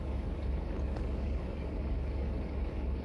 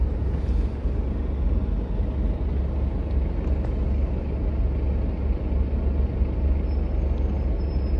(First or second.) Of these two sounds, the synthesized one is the first